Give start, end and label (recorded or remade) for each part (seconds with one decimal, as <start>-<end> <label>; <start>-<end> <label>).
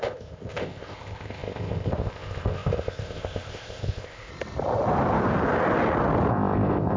0.0-4.3 remade; 4.3-6.3 recorded; 6.3-7.0 remade